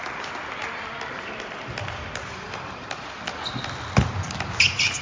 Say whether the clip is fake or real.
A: real